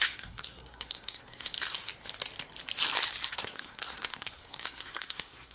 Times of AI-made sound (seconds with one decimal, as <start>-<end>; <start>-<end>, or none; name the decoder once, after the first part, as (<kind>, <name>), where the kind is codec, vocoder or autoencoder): 0.0-1.5 (codec, SNAC); 3.3-5.5